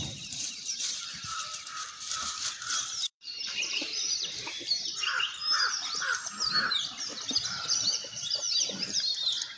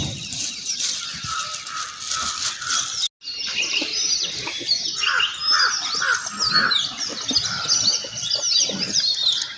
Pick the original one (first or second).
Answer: second